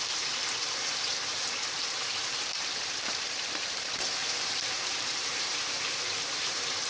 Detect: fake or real fake